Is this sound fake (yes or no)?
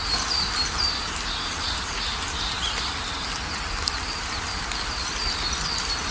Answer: no